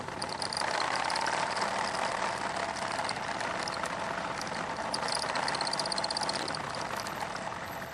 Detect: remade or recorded recorded